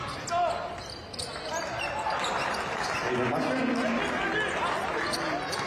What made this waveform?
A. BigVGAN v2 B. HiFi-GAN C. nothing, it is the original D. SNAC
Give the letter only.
C